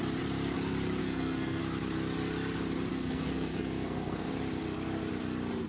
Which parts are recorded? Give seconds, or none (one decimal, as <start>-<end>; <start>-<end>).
0.0-1.0; 1.6-2.9; 4.3-5.7